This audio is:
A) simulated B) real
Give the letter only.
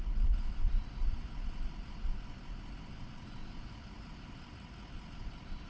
B